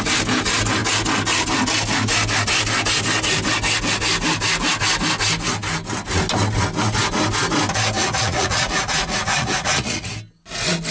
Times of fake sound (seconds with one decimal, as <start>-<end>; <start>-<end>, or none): 8.0-10.1